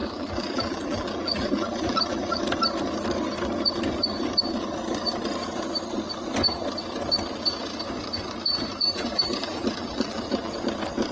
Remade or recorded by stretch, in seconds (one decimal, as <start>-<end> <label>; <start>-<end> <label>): 0.0-2.4 remade; 2.4-8.8 recorded; 8.8-10.5 remade; 10.5-11.1 recorded